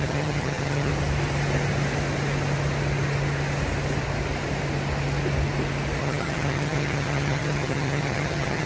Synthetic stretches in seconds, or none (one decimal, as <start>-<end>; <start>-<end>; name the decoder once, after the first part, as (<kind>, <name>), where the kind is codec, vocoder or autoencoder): 0.0-0.9 (vocoder, HiFi-GAN); 6.0-8.7